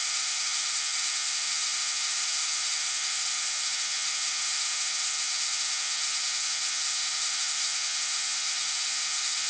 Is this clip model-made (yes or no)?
yes